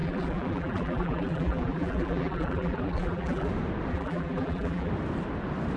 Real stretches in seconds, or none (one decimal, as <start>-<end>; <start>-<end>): 3.5-3.9; 4.9-5.8